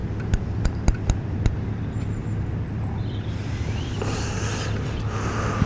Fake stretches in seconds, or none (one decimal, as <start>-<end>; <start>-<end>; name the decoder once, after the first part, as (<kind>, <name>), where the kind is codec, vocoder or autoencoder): 0.0-1.8 (vocoder, BigVGAN v2); 2.2-4.4